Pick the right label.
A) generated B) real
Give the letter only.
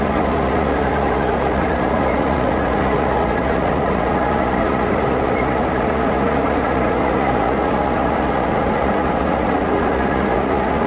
A